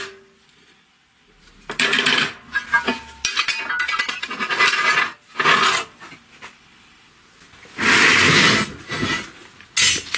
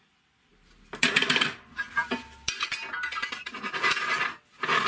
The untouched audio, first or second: first